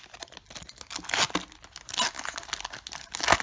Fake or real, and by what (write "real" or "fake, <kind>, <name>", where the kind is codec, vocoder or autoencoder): real